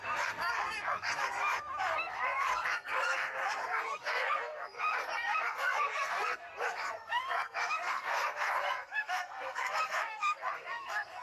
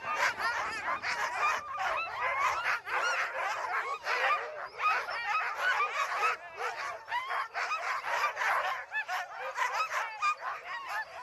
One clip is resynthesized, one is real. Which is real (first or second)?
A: second